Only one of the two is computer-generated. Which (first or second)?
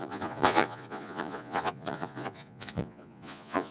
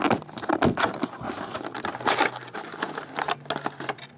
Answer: first